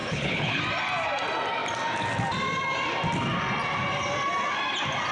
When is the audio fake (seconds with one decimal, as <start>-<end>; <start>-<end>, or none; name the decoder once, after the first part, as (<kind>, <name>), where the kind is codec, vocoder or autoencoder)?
0.0-0.6 (codec, HILCodec)